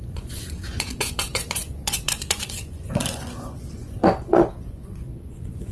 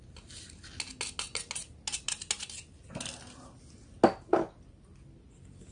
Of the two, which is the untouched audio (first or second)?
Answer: second